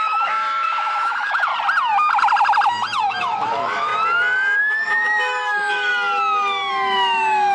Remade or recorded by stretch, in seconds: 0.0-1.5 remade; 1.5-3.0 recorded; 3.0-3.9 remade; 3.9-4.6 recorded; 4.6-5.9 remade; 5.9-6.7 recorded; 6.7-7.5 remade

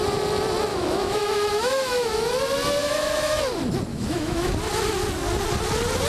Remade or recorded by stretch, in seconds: 0.0-0.7 recorded; 0.7-2.3 remade; 2.3-2.8 recorded; 2.8-3.4 remade; 3.4-3.9 recorded; 3.9-4.5 remade; 4.5-6.1 recorded

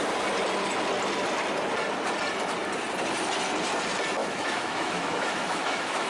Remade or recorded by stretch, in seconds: 0.0-4.2 recorded; 4.2-6.1 remade

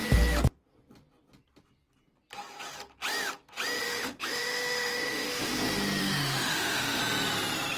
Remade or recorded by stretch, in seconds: 0.0-3.8 recorded; 3.8-5.5 remade; 5.5-6.0 recorded; 6.0-7.0 remade; 7.0-7.8 recorded

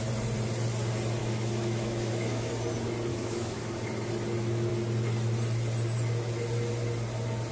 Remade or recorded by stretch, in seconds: 0.0-1.2 recorded; 1.2-2.5 remade; 2.5-3.1 recorded; 3.1-3.7 remade; 3.7-7.5 recorded